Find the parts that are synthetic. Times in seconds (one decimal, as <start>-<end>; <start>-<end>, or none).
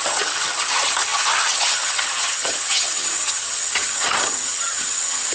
0.0-5.3